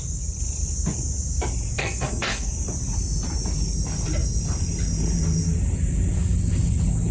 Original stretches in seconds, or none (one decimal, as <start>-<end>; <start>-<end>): 0.0-1.8; 2.5-7.1